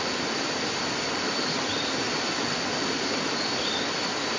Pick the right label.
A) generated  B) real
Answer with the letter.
B